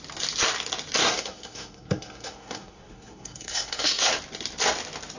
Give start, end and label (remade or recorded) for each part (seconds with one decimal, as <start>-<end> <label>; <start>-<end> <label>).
0.0-1.0 recorded; 1.0-4.1 remade; 4.1-5.2 recorded